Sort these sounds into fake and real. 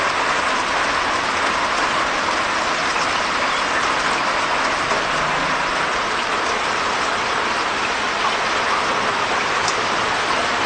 real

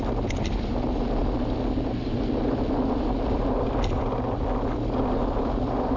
real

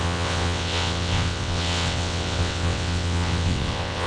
fake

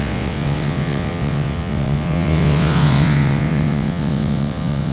fake